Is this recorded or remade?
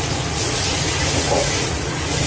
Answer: remade